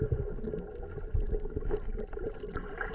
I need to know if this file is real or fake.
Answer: real